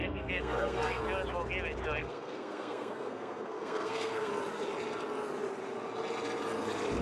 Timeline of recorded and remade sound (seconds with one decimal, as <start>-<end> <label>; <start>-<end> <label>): 0.0-1.0 remade; 1.0-2.0 recorded; 2.0-4.3 remade; 4.3-7.0 recorded